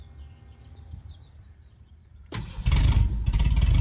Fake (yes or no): yes